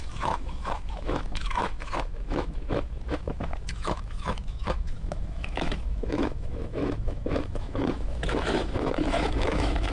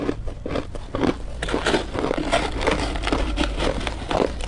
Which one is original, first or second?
second